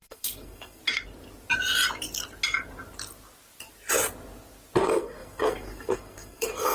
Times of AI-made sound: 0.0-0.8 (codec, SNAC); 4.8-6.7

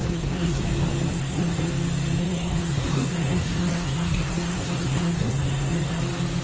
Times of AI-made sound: 0.0-0.6 (codec, SNAC); 1.1-1.7; 2.2-6.0

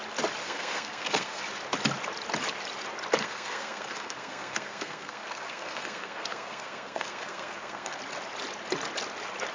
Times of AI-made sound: 0.4-1.4 (codec, SNAC); 3.2-8.0

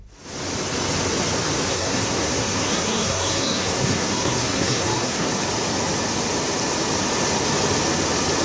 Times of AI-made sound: 1.7-5.3 (codec, SNAC)

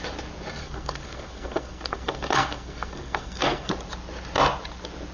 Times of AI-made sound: 0.6-3.7 (codec, SNAC)

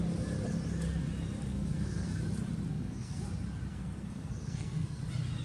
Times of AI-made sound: 1.5-2.2 (codec, SNAC); 2.7-3.2; 3.7-5.0

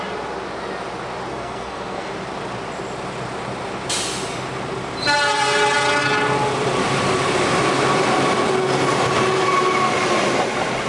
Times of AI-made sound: 1.3-2.1 (codec, SNAC)

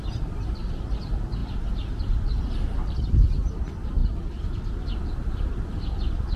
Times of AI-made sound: none